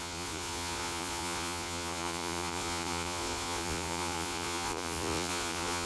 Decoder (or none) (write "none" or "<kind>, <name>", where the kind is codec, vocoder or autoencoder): vocoder, Vocos